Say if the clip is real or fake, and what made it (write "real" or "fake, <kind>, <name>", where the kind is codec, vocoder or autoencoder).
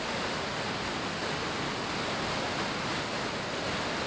real